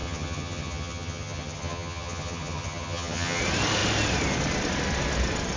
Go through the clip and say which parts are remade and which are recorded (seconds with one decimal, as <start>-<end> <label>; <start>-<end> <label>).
0.0-3.4 remade; 3.4-5.6 recorded